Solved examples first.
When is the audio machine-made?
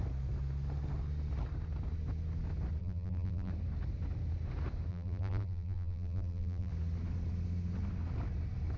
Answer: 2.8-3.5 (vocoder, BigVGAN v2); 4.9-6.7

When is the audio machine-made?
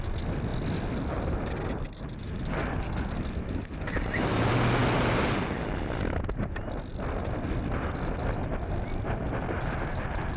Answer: none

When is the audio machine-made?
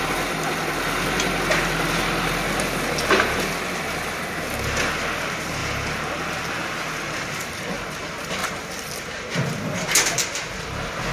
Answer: 8.4-9.1 (vocoder, BigVGAN v2)